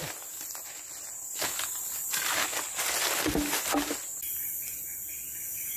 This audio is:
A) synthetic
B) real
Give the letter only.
B